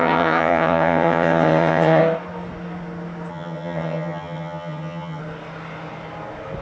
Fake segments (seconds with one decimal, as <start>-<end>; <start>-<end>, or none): 0.0-2.0; 3.3-5.2